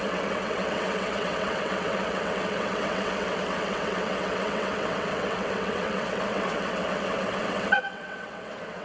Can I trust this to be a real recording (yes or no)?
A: no